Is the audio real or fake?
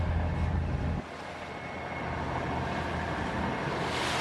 real